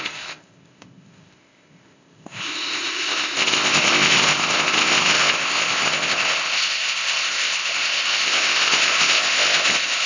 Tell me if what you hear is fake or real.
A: fake